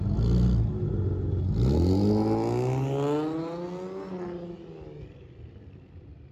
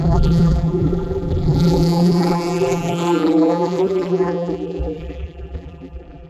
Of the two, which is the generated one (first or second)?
second